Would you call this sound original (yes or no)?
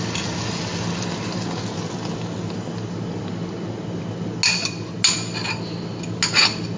yes